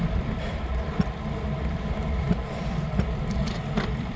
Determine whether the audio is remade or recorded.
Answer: remade